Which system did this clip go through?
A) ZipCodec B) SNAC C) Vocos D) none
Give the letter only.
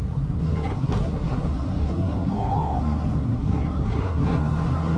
B